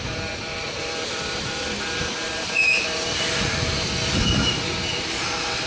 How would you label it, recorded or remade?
remade